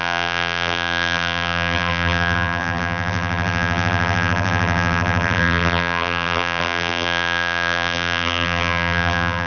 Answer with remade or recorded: remade